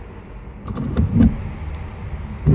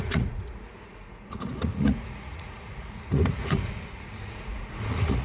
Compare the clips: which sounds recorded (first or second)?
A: first